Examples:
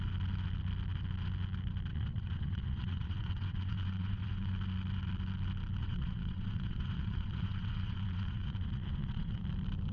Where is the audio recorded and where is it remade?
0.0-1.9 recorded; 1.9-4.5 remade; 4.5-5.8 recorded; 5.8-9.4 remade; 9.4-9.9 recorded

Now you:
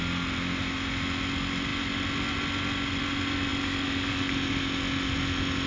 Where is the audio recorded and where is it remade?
0.0-5.7 recorded